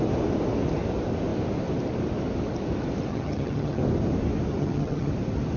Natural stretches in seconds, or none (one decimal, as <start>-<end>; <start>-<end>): 0.0-3.1; 3.8-4.5; 5.1-5.6

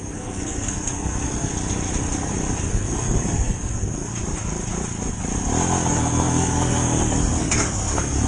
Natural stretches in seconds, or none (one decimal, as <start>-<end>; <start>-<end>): 1.5-2.7; 4.1-5.9

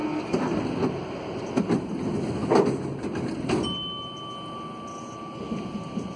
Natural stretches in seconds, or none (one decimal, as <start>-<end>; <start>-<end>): 0.0-6.2

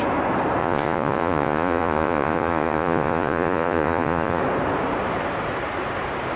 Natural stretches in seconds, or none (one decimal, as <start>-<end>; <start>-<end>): 0.0-0.6; 4.4-6.4

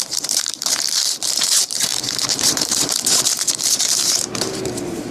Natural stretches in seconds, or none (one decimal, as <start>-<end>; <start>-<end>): none

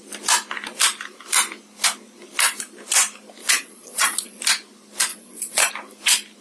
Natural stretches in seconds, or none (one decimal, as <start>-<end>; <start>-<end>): 0.0-3.4; 4.4-5.1; 5.7-6.4

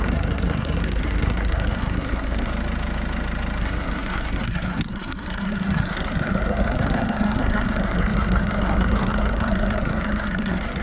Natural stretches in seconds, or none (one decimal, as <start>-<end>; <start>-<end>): 2.5-3.6